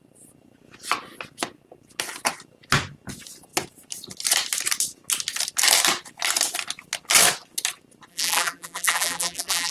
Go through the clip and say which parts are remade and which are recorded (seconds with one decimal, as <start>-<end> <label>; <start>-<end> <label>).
0.0-8.1 recorded; 8.1-9.7 remade